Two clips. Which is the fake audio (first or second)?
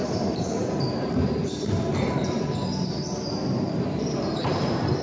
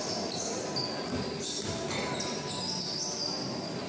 first